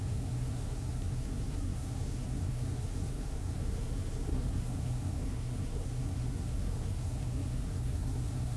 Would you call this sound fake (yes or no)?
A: yes